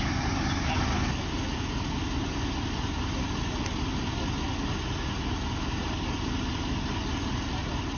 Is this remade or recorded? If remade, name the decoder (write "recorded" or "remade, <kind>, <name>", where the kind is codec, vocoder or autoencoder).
recorded